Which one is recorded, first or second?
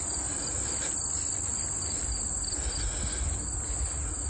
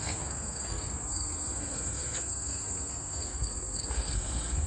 first